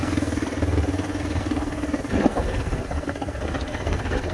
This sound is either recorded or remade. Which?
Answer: remade